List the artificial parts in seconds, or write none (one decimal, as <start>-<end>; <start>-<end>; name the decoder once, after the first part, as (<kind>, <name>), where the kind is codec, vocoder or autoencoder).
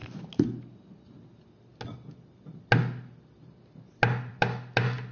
none